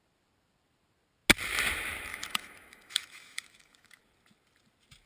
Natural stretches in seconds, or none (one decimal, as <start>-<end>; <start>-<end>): 0.0-2.1; 4.0-5.1